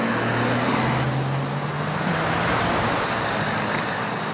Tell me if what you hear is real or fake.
fake